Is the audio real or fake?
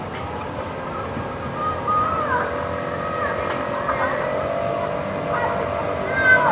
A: real